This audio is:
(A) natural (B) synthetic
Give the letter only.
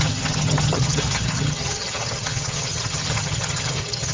B